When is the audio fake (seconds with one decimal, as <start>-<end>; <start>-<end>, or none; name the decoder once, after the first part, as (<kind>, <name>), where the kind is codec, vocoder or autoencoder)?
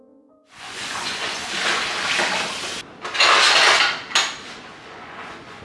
0.0-1.4 (vocoder, Vocos); 4.5-5.6